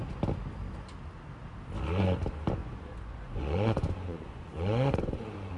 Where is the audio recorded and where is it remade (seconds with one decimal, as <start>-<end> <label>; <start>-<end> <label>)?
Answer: 0.0-2.6 recorded; 2.6-5.6 remade

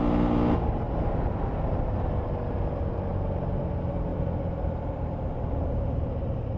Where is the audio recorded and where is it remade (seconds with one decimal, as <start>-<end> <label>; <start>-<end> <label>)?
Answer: 0.0-6.6 recorded

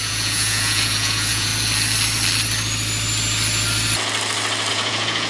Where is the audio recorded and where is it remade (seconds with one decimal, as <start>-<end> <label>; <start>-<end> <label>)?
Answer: 0.0-1.5 remade; 1.5-4.7 recorded; 4.7-5.3 remade

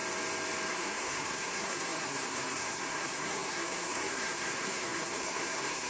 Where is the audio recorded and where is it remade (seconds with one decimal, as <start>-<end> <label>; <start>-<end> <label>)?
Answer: 0.0-0.7 recorded; 0.7-5.9 remade

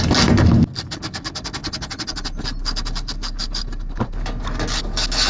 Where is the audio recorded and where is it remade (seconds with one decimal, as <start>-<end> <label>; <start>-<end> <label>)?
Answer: 0.0-5.3 recorded